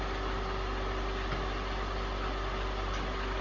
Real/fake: real